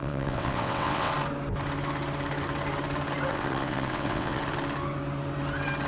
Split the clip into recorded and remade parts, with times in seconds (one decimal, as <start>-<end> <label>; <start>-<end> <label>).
0.0-1.1 remade; 1.1-3.3 recorded; 3.3-4.4 remade; 4.4-5.9 recorded